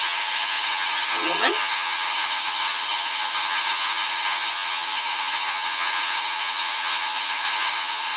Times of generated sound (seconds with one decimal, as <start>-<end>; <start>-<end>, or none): 0.0-8.2